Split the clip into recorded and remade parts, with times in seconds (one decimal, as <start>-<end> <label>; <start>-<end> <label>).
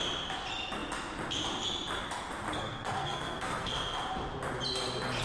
0.0-2.5 recorded; 2.5-4.0 remade; 4.0-5.2 recorded